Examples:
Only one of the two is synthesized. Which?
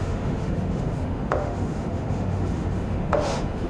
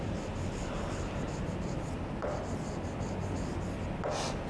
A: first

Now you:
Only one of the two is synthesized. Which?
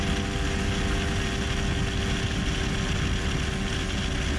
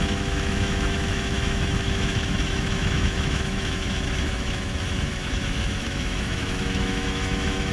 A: second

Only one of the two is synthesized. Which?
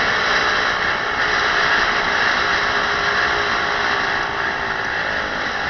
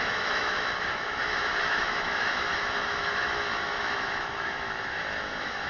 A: second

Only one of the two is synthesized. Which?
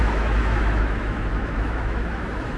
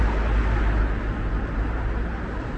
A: first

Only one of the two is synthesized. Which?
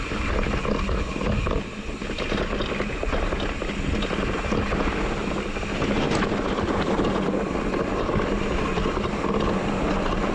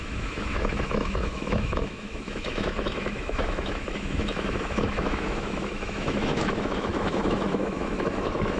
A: second